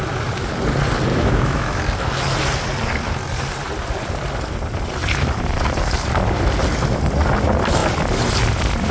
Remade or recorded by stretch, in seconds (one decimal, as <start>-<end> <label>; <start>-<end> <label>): 0.0-1.1 recorded; 1.1-1.8 remade; 1.8-8.9 recorded

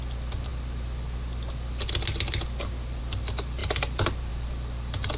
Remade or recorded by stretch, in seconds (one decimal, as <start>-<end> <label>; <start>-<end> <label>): 0.0-5.2 recorded

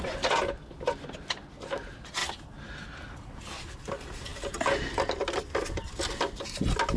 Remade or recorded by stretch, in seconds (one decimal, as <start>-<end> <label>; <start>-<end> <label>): 0.0-7.0 recorded

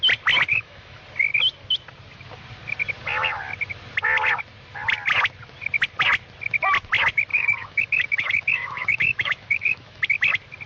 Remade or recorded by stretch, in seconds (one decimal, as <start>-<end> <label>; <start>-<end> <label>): 0.0-0.5 recorded; 0.5-1.0 remade; 1.0-7.3 recorded; 7.3-10.0 remade; 10.0-10.7 recorded

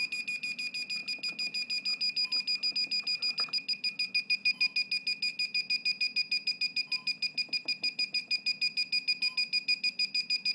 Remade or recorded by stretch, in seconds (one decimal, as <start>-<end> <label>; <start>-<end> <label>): 0.0-10.5 recorded